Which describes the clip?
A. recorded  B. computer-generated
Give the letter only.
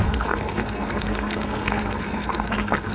B